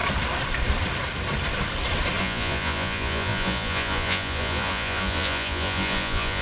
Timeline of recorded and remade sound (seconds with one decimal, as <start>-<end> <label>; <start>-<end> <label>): 0.0-2.2 recorded; 2.2-6.4 remade